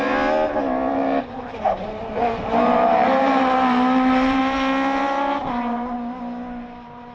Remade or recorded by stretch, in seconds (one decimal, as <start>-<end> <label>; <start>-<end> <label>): 0.0-0.9 recorded; 0.9-4.4 remade; 4.4-7.1 recorded